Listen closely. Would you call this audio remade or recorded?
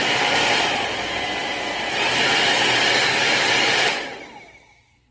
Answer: recorded